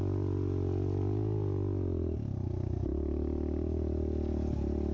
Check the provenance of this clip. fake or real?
real